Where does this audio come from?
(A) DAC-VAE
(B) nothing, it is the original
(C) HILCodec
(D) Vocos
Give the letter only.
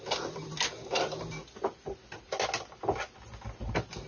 B